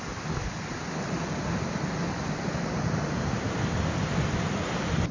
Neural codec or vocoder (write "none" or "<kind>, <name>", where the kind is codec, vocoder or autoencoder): none